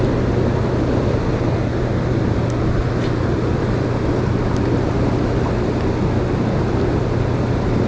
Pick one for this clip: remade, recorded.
recorded